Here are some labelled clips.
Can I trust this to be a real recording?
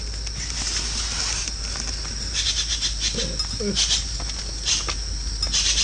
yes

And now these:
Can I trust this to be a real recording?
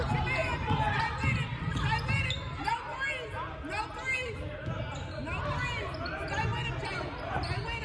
yes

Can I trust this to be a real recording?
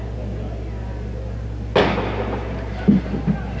yes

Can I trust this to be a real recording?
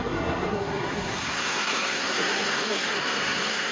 no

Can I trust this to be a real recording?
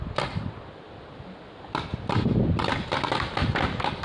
yes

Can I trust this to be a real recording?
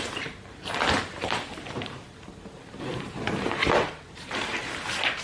no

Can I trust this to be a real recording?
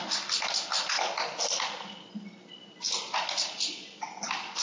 yes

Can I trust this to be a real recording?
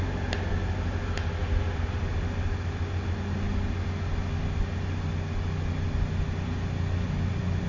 yes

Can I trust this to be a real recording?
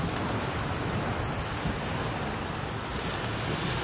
yes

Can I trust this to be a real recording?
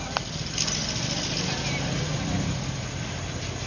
yes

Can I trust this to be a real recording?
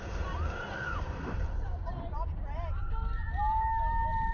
yes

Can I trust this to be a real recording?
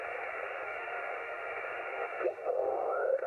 no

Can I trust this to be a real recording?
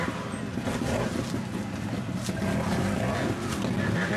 yes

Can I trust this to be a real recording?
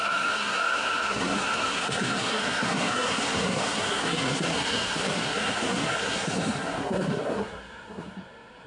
no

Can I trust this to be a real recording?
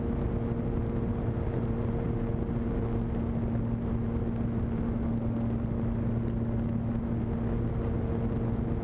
yes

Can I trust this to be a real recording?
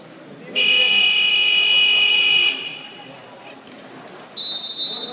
yes